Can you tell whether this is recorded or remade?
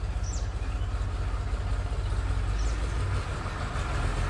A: recorded